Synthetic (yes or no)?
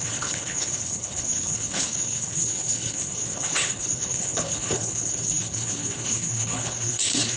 yes